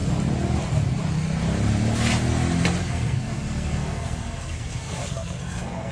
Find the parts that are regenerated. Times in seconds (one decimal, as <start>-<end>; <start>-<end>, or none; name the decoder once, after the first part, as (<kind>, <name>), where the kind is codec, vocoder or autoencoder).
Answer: 2.8-5.9 (codec, SNAC)

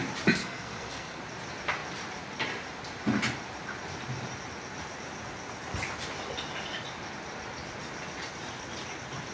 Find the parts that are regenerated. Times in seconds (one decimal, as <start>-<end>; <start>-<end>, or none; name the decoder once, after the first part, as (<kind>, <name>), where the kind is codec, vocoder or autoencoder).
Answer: 0.4-1.2 (codec, SNAC)

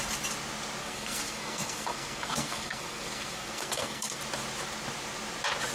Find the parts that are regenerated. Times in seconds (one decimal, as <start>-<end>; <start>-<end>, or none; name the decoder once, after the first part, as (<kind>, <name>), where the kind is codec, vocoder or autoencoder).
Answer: 0.8-4.2 (codec, SNAC)

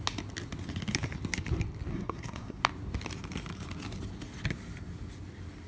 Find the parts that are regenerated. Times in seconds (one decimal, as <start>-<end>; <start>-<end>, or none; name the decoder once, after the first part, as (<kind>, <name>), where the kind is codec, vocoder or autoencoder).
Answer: 1.9-2.6 (codec, SNAC)

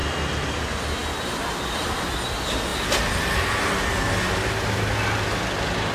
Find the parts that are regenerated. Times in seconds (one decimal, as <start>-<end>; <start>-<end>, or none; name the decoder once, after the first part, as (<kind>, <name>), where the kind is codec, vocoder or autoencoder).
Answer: none

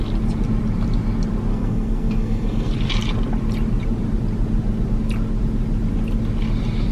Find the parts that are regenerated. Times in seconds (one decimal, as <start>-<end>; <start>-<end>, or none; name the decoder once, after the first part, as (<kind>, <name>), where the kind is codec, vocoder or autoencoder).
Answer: 1.5-2.7 (codec, SNAC)

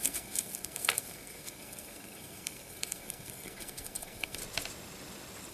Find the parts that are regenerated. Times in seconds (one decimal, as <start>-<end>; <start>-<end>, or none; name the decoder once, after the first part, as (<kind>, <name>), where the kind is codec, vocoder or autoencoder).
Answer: 0.0-4.4 (codec, SNAC)